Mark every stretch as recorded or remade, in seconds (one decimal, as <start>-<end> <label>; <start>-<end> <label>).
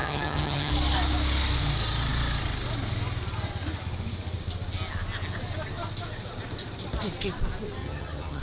0.0-0.7 remade; 0.7-7.8 recorded; 7.8-8.4 remade